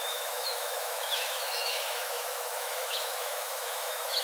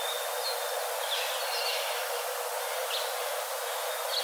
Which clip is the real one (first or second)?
second